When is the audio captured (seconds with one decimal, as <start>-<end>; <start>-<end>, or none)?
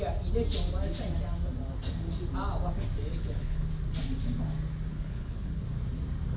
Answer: 0.0-3.1; 3.7-4.9; 5.6-6.4